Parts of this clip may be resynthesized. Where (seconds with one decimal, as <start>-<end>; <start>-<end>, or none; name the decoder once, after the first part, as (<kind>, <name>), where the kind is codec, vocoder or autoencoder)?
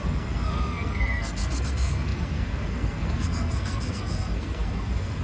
0.0-5.2 (codec, SNAC)